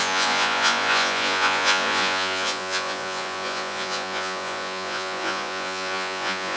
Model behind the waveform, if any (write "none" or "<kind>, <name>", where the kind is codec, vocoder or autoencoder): vocoder, Vocos